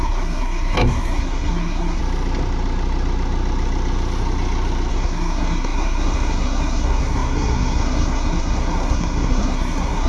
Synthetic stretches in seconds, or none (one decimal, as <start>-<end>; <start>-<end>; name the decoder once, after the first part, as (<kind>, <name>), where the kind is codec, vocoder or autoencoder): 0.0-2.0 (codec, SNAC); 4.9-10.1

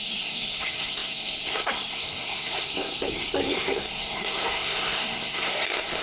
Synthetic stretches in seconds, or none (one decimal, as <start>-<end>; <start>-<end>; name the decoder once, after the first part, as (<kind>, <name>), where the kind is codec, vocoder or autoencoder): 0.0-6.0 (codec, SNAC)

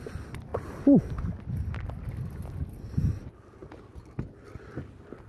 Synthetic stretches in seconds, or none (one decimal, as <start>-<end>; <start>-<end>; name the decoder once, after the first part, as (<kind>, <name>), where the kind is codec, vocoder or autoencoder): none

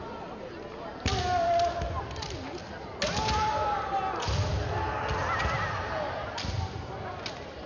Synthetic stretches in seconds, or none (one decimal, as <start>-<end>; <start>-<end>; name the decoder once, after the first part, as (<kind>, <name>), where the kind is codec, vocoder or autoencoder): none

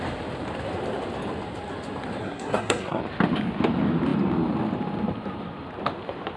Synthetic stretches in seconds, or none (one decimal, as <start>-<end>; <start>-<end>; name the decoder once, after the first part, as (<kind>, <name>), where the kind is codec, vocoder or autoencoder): 2.2-3.0 (codec, SNAC)